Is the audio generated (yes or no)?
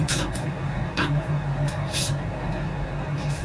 yes